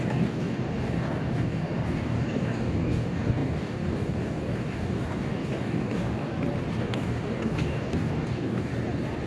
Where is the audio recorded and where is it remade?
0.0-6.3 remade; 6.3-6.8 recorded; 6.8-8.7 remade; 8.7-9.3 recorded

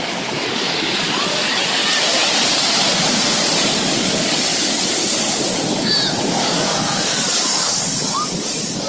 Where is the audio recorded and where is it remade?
0.0-1.8 remade; 1.8-3.7 recorded; 3.7-4.5 remade; 4.5-6.4 recorded; 6.4-8.9 remade

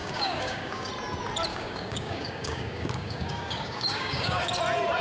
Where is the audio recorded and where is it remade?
0.0-0.9 remade; 0.9-1.5 recorded; 1.5-4.5 remade; 4.5-5.0 recorded

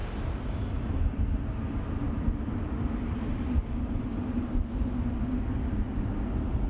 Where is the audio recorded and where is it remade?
0.0-6.7 recorded

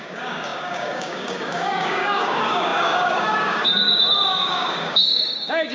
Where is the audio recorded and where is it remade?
0.0-5.7 remade